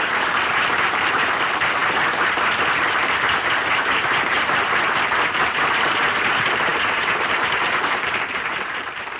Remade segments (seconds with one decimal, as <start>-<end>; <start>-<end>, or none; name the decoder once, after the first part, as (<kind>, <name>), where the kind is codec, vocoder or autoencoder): 0.0-9.2 (vocoder, BigVGAN v2)